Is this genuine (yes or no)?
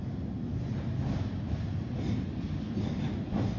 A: yes